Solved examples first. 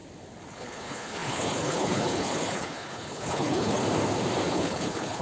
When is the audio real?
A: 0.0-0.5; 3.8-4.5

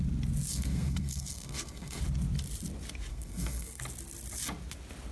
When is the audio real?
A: 0.0-0.5; 2.0-3.1; 3.8-5.1

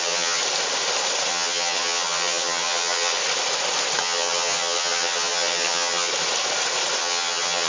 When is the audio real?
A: 0.4-1.3; 3.2-4.0; 6.1-7.0